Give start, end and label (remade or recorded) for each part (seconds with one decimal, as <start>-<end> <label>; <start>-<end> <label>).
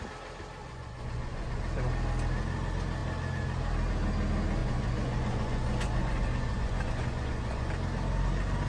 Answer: 0.0-0.6 recorded; 0.6-1.6 remade; 1.6-4.6 recorded; 4.6-7.7 remade; 7.7-8.7 recorded